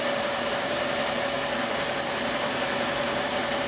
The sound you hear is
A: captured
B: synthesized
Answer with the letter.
A